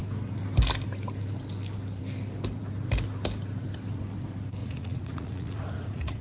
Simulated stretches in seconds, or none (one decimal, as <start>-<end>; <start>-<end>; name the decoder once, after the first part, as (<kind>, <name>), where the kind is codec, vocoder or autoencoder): 4.6-6.2 (vocoder, Vocos)